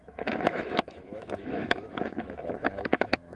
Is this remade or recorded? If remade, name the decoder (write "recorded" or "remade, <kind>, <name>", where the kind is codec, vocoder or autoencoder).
remade, autoencoder, DAC-VAE